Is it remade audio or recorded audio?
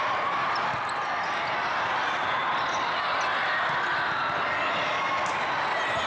recorded